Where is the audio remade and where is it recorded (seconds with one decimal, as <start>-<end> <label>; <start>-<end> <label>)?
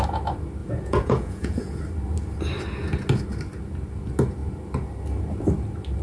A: 0.0-0.6 recorded; 0.6-1.8 remade; 1.8-6.0 recorded